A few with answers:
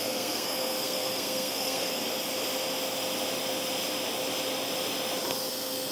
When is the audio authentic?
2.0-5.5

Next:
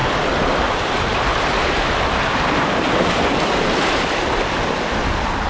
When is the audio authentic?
0.0-5.5

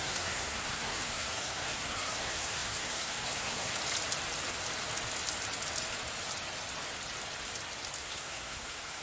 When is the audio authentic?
3.7-8.0

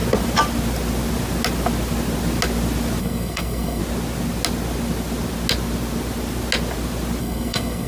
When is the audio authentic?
0.0-3.0; 3.8-7.2

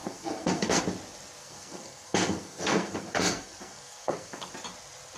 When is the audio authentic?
0.8-1.4; 4.5-5.2

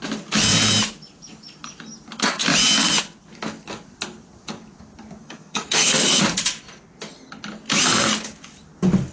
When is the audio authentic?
0.0-5.2; 6.2-9.1